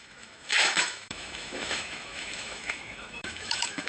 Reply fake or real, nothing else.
fake